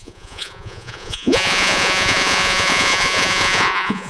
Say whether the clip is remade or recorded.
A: remade